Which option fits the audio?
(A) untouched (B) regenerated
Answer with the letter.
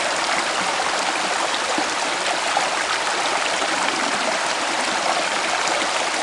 A